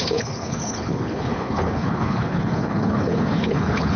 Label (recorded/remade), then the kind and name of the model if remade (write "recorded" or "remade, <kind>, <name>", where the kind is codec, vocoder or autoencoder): remade, codec, HILCodec